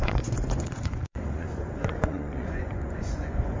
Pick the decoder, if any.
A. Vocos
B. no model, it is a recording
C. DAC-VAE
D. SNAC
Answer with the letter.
A